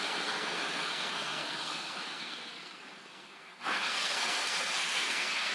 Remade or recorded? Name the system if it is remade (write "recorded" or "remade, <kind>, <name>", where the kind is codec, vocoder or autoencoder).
remade, codec, SNAC